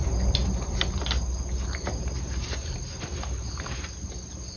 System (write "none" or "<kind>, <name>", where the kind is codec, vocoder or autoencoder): none